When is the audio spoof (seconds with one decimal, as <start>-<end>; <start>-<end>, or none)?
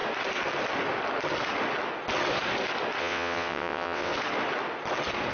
3.0-4.1